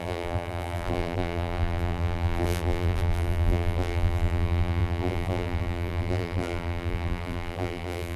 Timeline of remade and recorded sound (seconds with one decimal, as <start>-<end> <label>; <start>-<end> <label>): 0.0-8.2 remade